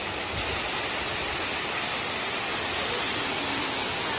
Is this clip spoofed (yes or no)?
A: no